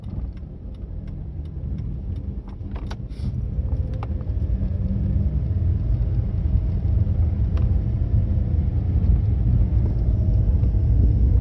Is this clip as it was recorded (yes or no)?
yes